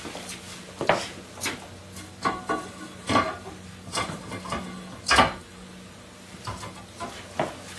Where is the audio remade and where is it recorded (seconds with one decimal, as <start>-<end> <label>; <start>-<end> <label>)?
0.0-3.0 recorded; 3.0-4.0 remade; 4.0-7.8 recorded